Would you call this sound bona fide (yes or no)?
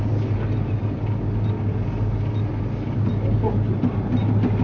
yes